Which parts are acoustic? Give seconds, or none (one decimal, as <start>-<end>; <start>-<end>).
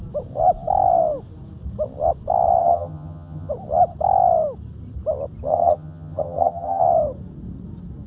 0.0-2.6; 3.5-5.5; 6.8-8.1